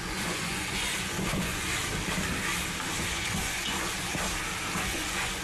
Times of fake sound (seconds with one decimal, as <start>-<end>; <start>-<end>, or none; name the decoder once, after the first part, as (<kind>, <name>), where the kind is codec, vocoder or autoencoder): 0.0-1.7 (vocoder, Vocos); 3.0-4.1; 4.8-5.4